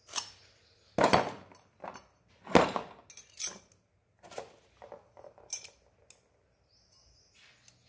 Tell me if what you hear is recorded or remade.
recorded